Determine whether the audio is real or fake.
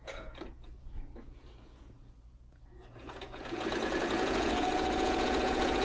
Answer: fake